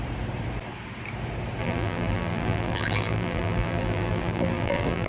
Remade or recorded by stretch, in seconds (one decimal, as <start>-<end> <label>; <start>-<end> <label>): 0.0-1.6 recorded; 1.6-5.1 remade